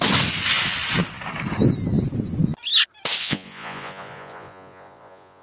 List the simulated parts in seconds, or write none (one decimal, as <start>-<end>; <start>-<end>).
3.2-5.4